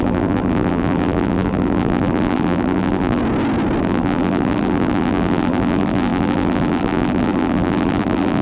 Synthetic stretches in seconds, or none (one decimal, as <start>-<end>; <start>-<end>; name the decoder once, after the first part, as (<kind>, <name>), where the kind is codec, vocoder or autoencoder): 0.0-3.2 (vocoder, BigVGAN v2); 3.8-8.4